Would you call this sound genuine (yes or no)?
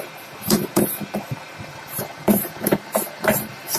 no